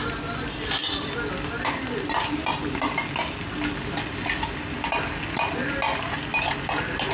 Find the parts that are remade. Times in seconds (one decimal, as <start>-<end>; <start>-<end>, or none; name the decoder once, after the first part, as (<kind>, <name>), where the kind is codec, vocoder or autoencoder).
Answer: none